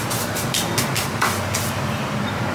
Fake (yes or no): no